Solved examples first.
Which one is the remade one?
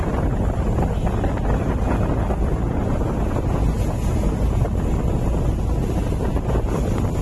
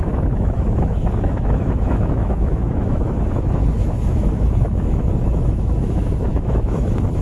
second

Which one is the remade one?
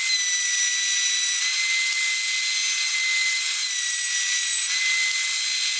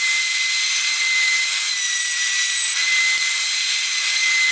second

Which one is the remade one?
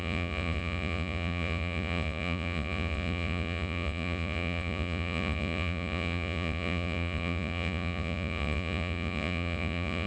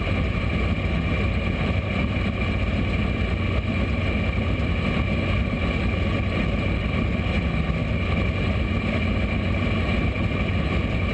first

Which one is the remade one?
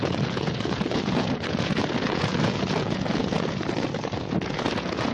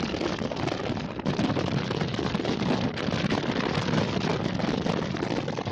first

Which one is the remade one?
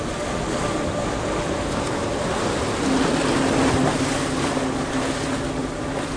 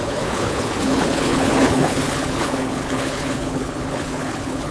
second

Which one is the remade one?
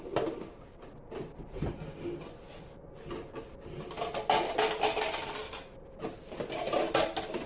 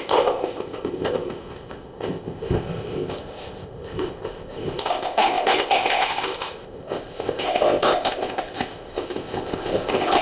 second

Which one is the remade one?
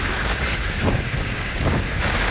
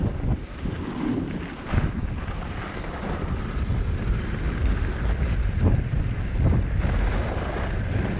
first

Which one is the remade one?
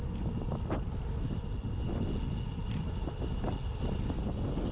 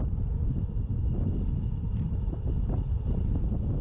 second